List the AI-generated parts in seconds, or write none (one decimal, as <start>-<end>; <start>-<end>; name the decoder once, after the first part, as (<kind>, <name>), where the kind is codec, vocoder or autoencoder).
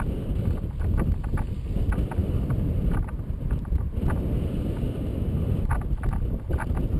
none